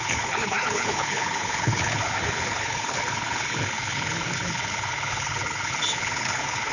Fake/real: fake